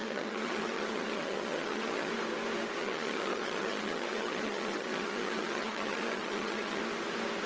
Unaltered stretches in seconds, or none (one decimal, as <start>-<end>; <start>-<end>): 2.1-2.8; 6.8-7.5